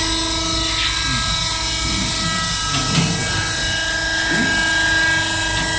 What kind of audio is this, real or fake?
real